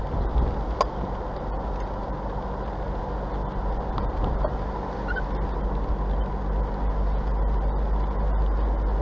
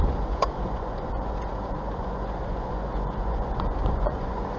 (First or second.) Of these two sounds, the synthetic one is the second